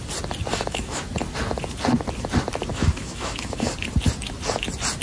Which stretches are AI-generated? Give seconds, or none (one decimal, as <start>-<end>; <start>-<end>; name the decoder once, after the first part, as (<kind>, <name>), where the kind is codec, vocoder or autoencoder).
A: 0.5-1.0 (autoencoder, DAC-VAE); 2.7-3.7